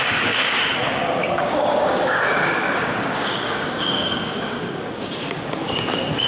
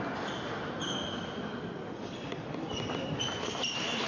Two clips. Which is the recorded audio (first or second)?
second